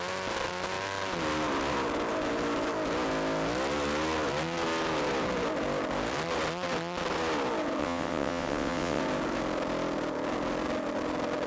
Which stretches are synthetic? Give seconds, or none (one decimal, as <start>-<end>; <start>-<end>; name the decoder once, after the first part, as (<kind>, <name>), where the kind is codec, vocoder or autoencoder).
7.8-9.0 (vocoder, WaveNeXt)